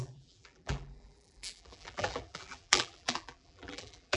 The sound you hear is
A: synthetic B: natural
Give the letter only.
A